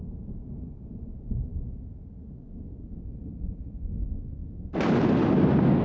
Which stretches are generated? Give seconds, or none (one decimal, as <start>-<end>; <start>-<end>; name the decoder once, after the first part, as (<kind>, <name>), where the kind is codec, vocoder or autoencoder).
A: none